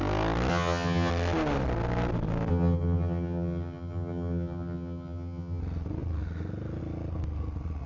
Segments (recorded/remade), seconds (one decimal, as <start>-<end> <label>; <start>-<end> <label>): 0.0-0.5 recorded; 0.5-1.1 remade; 1.1-2.5 recorded; 2.5-5.6 remade; 5.6-7.9 recorded